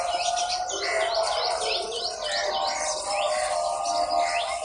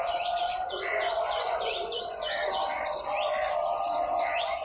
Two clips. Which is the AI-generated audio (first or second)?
second